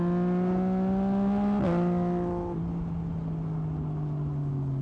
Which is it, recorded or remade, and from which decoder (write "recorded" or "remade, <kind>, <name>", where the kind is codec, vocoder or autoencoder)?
recorded